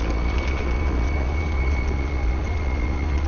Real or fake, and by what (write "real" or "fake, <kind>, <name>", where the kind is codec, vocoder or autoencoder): fake, vocoder, Vocos